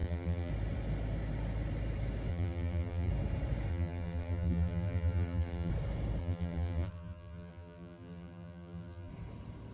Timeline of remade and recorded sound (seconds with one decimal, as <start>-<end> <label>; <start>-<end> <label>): 0.0-0.5 remade; 0.5-2.3 recorded; 2.3-3.1 remade; 3.1-3.7 recorded; 3.7-5.7 remade; 5.7-6.2 recorded; 6.2-9.1 remade; 9.1-9.7 recorded